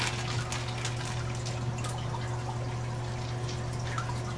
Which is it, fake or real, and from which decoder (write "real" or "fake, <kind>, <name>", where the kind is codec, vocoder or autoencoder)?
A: real